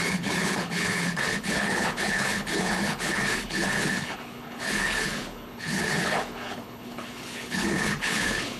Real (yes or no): no